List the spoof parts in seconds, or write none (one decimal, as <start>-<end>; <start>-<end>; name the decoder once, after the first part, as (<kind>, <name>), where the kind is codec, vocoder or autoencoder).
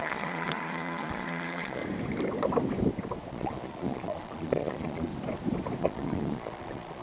0.0-1.8 (vocoder, Vocos); 3.3-5.1; 5.8-7.0